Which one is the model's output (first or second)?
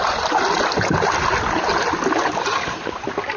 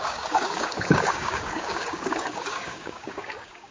second